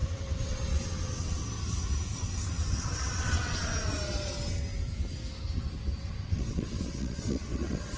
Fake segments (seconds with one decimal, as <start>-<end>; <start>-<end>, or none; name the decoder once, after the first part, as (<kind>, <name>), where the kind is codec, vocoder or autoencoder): 0.0-1.4 (vocoder, WaveNeXt); 2.2-3.7; 6.0-8.0